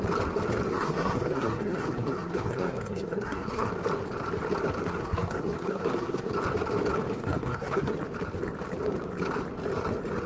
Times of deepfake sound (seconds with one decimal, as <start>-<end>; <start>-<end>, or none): 0.7-3.7; 5.0-6.3; 7.1-7.9